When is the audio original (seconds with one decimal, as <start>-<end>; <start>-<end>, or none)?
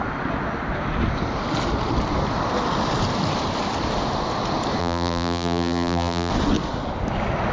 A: 0.0-4.8; 6.3-7.5